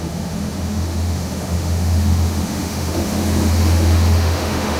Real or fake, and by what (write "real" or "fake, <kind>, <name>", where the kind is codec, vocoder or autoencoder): fake, autoencoder, DAC-VAE